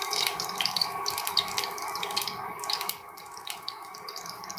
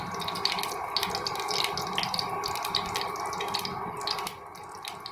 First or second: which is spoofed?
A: first